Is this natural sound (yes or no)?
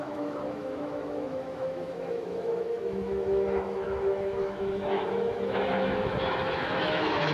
no